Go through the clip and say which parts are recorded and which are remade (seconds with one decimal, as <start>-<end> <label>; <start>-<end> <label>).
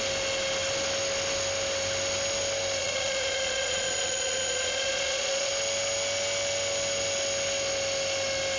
0.0-2.8 recorded; 2.8-5.5 remade; 5.5-8.6 recorded